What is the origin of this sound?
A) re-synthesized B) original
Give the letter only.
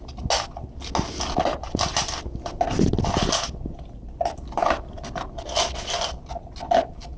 B